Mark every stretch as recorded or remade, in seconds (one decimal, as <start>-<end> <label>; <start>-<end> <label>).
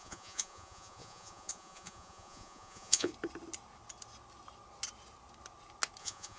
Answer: 0.0-3.1 remade; 3.1-6.0 recorded; 6.0-6.4 remade